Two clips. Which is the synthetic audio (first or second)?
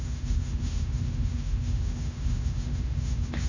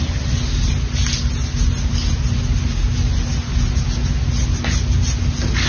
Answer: first